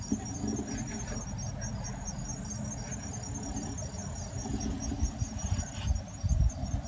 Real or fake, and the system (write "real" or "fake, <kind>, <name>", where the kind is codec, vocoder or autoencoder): real